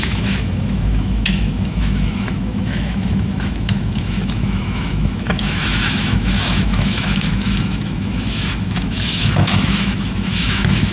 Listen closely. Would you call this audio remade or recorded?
remade